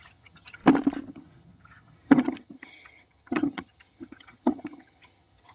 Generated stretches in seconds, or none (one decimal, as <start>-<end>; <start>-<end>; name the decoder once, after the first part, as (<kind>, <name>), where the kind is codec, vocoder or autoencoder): 0.0-0.6 (vocoder, HiFi-GAN); 1.1-5.5